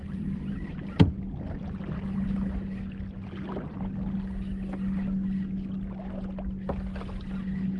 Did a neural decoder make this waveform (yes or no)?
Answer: no